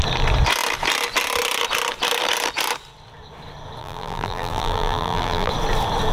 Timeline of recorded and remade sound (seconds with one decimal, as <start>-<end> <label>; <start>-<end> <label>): 0.0-3.8 recorded; 3.8-5.5 remade; 5.5-6.1 recorded